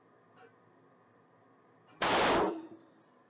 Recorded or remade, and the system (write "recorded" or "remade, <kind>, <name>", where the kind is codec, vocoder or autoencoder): remade, vocoder, BigVGAN v2